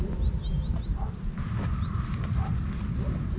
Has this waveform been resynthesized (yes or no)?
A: no